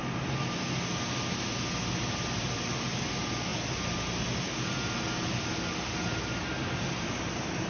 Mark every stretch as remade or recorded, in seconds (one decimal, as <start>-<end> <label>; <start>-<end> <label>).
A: 0.0-7.7 recorded